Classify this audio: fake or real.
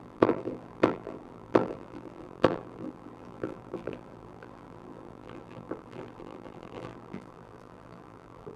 fake